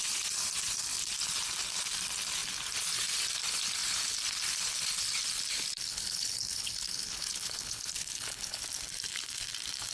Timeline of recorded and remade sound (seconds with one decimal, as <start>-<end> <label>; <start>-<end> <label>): 0.0-5.9 recorded; 5.9-8.6 remade; 8.6-9.9 recorded